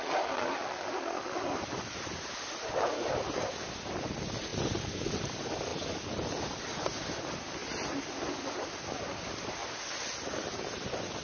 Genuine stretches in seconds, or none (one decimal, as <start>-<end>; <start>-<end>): 0.0-11.2